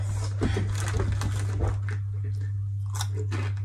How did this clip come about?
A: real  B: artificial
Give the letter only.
A